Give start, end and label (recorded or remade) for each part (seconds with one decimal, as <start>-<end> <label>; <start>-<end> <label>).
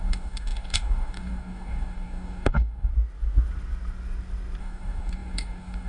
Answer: 0.0-2.9 remade; 2.9-4.6 recorded; 4.6-5.9 remade